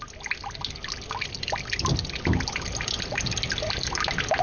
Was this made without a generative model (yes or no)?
yes